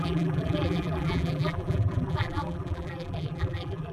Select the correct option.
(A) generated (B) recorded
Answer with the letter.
A